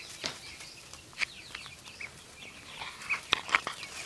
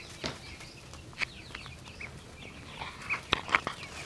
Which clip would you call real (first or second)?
second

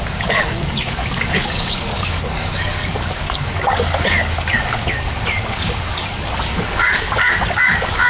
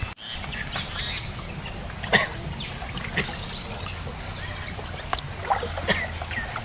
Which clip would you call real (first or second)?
second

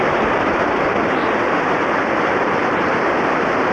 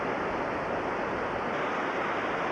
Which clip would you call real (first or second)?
second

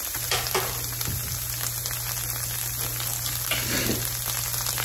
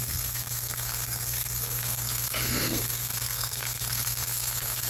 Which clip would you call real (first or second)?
first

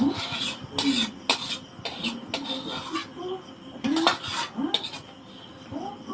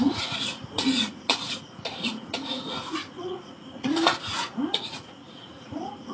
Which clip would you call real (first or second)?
first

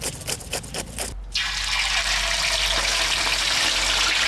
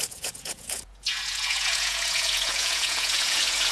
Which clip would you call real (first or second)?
first